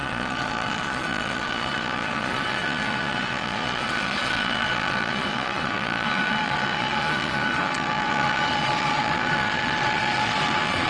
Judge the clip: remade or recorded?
remade